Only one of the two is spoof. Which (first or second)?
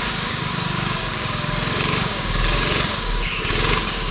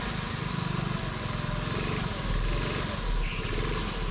first